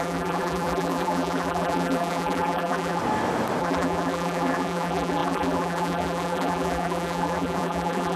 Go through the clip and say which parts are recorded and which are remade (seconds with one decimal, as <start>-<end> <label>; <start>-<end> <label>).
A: 0.0-3.0 remade; 3.0-3.6 recorded; 3.6-8.2 remade